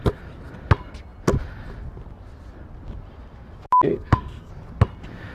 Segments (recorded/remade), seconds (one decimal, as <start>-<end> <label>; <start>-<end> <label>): 0.0-3.9 recorded; 3.9-4.5 remade; 4.5-5.3 recorded